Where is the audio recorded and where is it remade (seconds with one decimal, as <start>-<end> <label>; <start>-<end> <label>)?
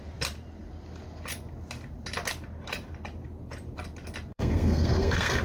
0.0-4.3 recorded; 4.3-5.4 remade